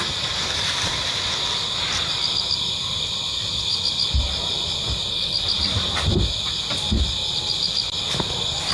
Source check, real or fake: real